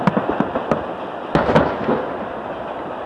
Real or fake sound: real